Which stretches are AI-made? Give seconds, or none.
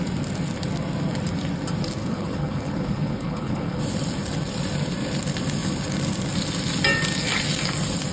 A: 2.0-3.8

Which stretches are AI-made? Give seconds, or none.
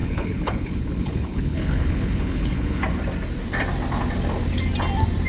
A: 0.0-2.8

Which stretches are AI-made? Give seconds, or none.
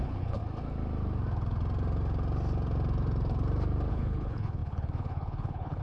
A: 0.0-0.4; 3.9-5.8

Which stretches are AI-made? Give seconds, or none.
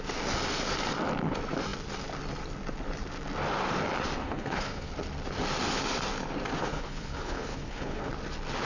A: 4.2-4.9; 6.6-8.1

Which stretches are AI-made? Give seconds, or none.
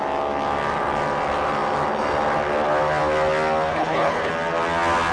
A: 3.7-4.3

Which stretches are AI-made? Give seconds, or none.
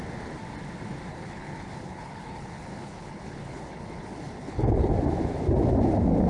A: 1.1-4.9